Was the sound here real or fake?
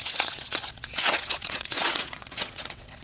fake